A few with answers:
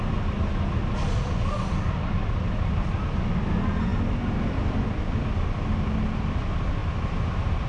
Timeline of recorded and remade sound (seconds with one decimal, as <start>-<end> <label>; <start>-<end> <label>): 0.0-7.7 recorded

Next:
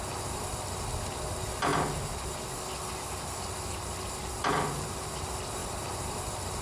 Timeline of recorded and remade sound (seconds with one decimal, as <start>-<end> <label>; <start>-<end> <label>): 0.0-6.6 recorded

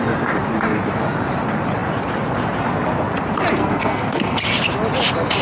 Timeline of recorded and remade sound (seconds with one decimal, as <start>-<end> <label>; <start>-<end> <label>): 0.0-3.6 recorded; 3.6-4.4 remade; 4.4-5.4 recorded